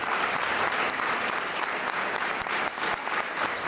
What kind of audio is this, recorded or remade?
recorded